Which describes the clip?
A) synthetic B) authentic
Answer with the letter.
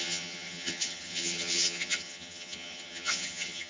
A